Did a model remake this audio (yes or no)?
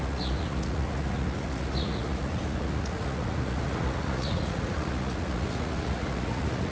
yes